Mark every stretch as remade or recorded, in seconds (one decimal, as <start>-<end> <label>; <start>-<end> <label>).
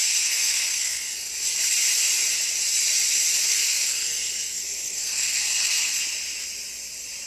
0.0-1.3 remade; 1.3-3.6 recorded; 3.6-6.0 remade; 6.0-7.3 recorded